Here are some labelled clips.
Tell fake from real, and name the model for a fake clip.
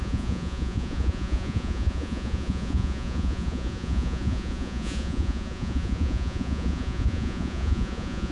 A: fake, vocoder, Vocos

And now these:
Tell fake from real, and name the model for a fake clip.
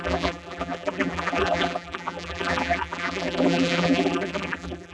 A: fake, vocoder, BigVGAN v2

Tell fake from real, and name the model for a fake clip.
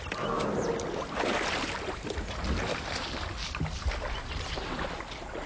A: real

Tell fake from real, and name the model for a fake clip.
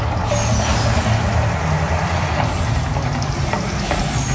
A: real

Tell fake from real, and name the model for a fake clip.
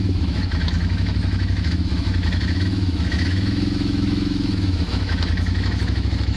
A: fake, autoencoder, DAC-VAE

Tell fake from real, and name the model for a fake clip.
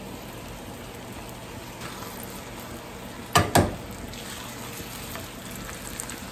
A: real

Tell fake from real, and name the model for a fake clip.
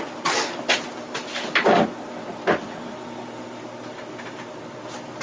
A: real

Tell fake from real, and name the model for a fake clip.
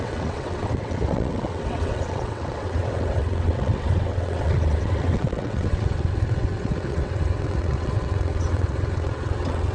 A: fake, vocoder, WaveNeXt